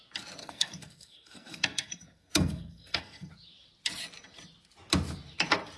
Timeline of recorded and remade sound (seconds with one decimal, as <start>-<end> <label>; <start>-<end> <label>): 0.0-0.4 recorded; 0.4-3.3 remade; 3.3-5.8 recorded